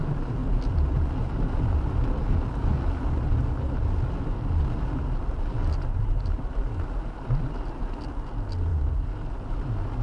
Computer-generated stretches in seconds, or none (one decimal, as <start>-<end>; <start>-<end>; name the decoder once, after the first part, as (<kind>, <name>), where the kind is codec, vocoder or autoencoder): none